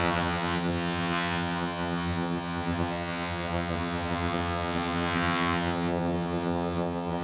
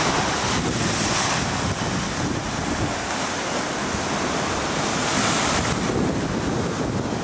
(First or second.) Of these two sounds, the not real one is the first